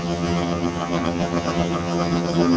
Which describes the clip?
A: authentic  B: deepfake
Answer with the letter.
B